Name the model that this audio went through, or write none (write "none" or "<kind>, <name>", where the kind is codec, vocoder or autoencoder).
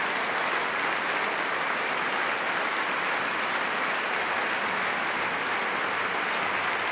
none